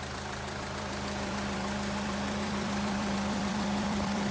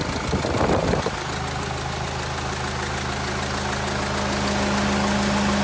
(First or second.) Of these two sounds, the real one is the second